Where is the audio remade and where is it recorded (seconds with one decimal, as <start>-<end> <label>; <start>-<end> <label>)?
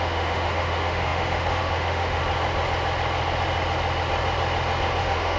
0.0-2.2 remade; 2.2-5.0 recorded; 5.0-5.4 remade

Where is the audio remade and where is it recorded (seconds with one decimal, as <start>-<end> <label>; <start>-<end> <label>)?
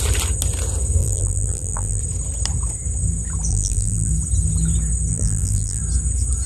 0.0-1.0 recorded; 1.0-2.0 remade; 2.0-3.5 recorded; 3.5-4.1 remade; 4.1-5.1 recorded; 5.1-5.8 remade; 5.8-6.5 recorded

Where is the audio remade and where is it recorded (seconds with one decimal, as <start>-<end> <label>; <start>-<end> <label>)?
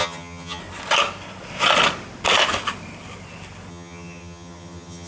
0.0-0.6 remade; 0.6-3.7 recorded; 3.7-5.1 remade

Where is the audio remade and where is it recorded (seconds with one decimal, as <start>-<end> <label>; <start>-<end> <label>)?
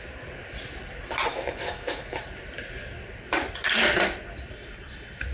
0.0-1.3 recorded; 1.3-2.2 remade; 2.2-5.3 recorded